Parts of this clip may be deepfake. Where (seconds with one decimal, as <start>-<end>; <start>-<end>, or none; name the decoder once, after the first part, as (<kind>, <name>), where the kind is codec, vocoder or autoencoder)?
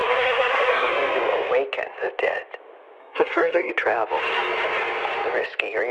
0.0-0.9 (codec, SNAC); 3.0-3.7